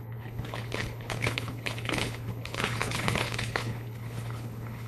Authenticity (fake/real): fake